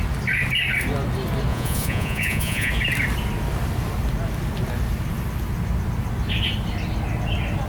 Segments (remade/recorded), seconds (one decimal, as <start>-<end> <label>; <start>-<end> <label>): 0.0-1.5 recorded; 1.5-2.7 remade; 2.7-7.7 recorded